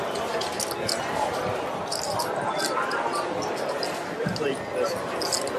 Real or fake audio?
real